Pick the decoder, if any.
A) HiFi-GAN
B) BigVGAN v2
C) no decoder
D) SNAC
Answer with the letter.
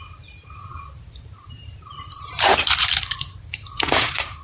B